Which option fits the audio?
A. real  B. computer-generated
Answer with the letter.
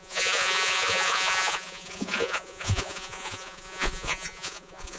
B